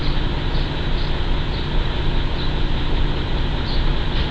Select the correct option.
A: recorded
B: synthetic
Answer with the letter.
A